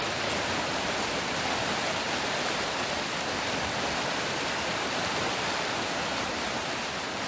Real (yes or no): yes